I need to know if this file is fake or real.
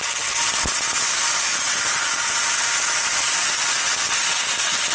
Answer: real